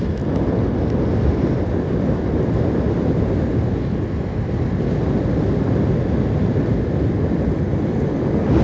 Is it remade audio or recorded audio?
recorded